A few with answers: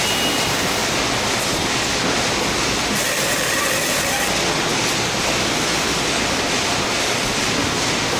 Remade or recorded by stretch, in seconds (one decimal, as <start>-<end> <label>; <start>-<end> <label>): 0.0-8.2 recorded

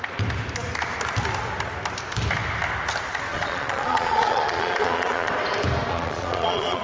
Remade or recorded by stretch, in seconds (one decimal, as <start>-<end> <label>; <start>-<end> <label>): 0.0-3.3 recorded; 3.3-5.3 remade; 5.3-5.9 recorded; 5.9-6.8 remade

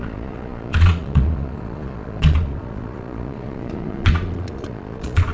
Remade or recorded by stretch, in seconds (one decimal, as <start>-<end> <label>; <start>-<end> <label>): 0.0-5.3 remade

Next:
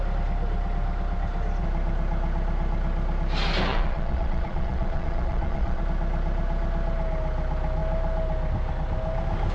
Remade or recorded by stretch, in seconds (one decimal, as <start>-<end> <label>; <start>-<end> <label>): 0.0-3.7 recorded; 3.7-5.8 remade; 5.8-9.5 recorded